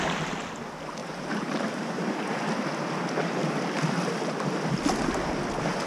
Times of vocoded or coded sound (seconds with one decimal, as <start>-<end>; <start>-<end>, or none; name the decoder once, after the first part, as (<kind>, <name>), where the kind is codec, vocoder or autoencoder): 1.0-2.2 (vocoder, BigVGAN v2)